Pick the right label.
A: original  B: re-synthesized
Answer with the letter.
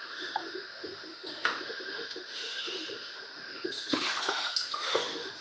B